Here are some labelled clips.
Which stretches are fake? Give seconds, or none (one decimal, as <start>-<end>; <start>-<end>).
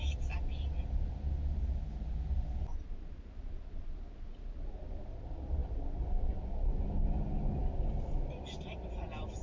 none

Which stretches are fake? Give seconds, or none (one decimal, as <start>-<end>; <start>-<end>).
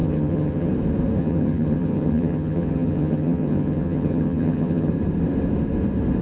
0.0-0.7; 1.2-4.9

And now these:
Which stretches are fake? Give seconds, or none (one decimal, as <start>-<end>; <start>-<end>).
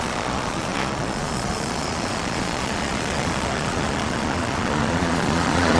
0.0-5.8